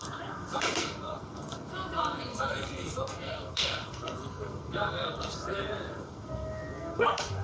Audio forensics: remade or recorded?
remade